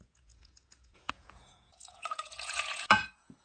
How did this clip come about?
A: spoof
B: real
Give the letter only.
A